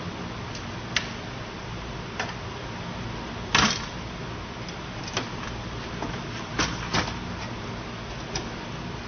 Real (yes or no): yes